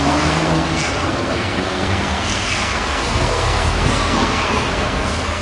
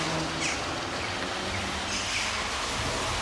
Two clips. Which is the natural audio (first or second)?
second